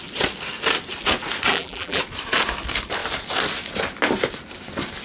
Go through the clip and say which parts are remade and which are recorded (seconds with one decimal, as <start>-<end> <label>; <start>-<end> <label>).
0.0-1.5 recorded; 1.5-2.0 remade; 2.0-5.0 recorded